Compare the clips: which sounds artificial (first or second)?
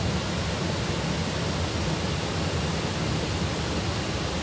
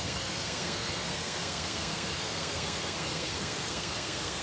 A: second